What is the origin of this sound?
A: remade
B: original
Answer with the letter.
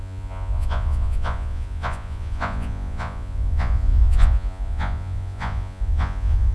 A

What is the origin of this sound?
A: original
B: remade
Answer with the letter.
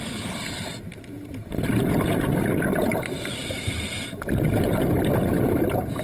A